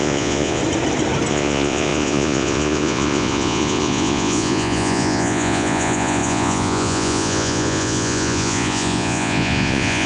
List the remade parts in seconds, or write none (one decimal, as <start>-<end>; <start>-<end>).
0.0-0.6; 1.3-10.1